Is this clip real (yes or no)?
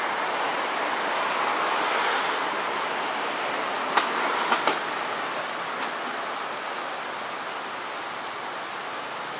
yes